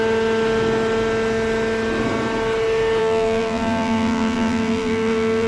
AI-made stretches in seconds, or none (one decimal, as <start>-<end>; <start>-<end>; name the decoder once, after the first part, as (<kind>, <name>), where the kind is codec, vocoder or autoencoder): 3.0-5.5 (vocoder, BigVGAN v2)